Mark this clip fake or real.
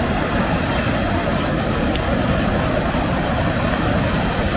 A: real